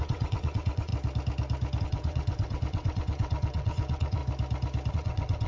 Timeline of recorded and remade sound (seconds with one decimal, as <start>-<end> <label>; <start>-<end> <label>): 0.0-0.9 remade; 0.9-1.8 recorded; 1.8-4.2 remade; 4.2-4.9 recorded; 4.9-5.5 remade